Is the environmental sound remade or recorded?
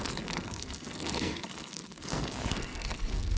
remade